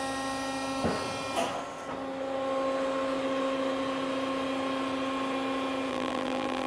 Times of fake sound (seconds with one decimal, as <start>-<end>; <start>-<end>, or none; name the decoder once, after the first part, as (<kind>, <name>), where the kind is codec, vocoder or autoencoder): 5.9-6.7 (vocoder, BigVGAN v2)